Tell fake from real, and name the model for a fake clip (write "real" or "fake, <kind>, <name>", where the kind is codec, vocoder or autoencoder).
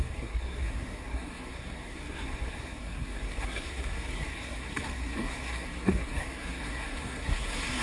fake, codec, SNAC